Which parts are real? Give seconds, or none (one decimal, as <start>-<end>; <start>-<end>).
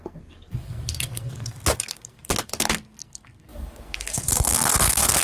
none